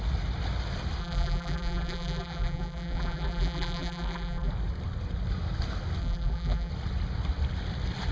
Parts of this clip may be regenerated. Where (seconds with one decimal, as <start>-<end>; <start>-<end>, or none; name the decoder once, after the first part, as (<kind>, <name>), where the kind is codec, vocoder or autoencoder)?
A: 1.0-4.5 (vocoder, BigVGAN v2); 6.0-6.7